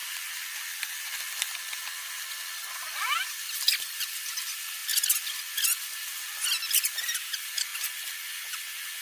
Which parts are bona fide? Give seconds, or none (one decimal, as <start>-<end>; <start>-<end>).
0.0-9.0